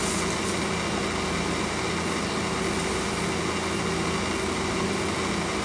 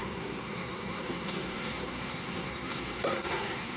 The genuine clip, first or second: first